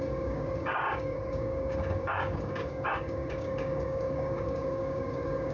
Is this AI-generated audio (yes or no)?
yes